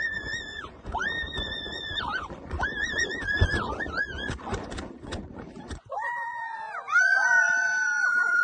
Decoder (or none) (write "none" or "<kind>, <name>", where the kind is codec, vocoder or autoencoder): vocoder, Vocos